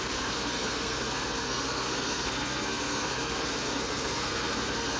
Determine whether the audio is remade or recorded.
remade